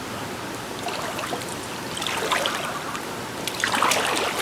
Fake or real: real